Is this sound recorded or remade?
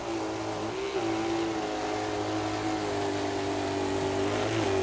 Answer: recorded